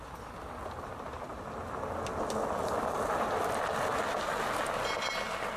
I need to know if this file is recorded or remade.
recorded